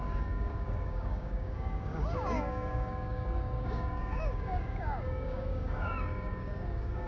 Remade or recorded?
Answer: remade